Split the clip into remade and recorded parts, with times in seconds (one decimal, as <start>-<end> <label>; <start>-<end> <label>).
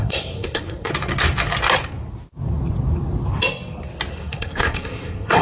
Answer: 0.0-0.9 remade; 0.9-4.1 recorded; 4.1-5.4 remade